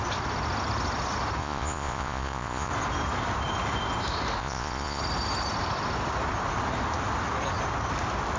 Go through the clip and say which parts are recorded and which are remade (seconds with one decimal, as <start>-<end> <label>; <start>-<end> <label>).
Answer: 0.0-1.4 recorded; 1.4-2.7 remade; 2.7-4.4 recorded; 4.4-5.0 remade; 5.0-8.4 recorded